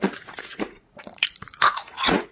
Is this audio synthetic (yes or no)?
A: yes